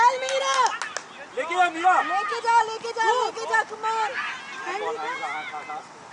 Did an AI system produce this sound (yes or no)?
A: no